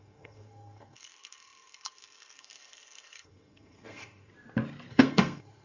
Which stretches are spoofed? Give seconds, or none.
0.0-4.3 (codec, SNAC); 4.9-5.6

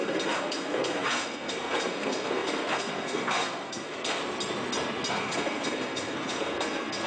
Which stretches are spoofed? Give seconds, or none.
0.0-4.2 (codec, SNAC); 5.1-7.1

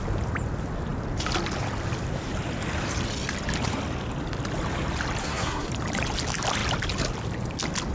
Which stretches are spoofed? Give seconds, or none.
5.2-5.7 (codec, SNAC)

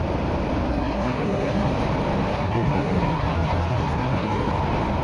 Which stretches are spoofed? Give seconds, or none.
0.7-1.7 (codec, SNAC); 2.3-4.5

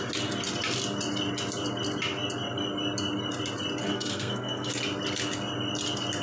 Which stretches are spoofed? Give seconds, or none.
3.8-4.7 (codec, SNAC)

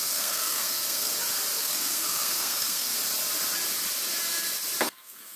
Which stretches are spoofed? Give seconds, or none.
0.0-1.1 (codec, SNAC); 1.6-2.9; 4.8-5.4

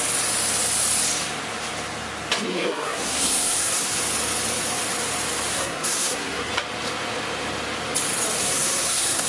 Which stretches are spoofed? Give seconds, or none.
2.5-4.0 (codec, SNAC); 5.5-6.5; 8.4-9.3

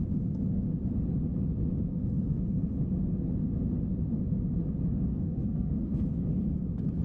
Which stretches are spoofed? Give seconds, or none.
1.9-2.7 (codec, SNAC); 5.1-6.5